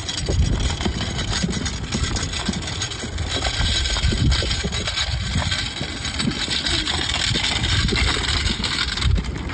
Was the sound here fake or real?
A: real